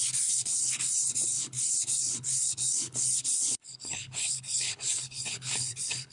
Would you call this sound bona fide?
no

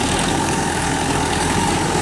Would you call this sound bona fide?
no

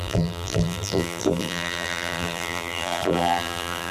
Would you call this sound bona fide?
no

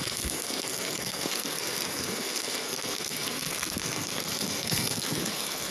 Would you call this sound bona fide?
no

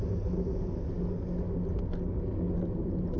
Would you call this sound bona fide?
yes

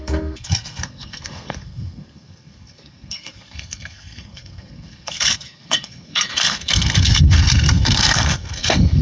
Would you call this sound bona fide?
no